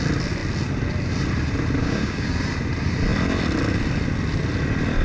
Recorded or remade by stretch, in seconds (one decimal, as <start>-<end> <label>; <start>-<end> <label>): 0.0-1.8 recorded; 1.8-2.3 remade; 2.3-5.0 recorded